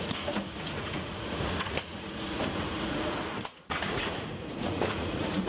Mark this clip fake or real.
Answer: fake